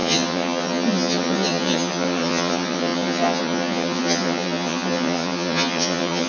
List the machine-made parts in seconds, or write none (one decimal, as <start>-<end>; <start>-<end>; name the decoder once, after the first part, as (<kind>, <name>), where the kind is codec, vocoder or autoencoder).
0.0-6.3 (vocoder, HiFi-GAN)